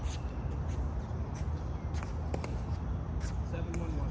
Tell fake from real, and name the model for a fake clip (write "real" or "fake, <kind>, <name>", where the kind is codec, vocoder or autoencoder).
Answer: real